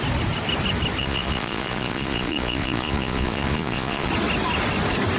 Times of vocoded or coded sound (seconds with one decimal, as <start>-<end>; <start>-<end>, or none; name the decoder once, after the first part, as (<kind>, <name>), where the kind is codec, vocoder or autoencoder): 1.0-4.1 (vocoder, Vocos)